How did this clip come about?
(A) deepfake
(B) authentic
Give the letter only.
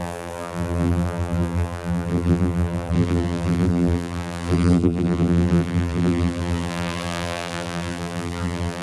A